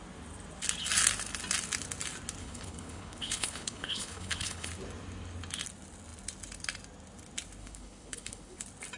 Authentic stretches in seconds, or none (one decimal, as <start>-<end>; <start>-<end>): 0.0-2.4; 4.7-7.6; 8.6-9.0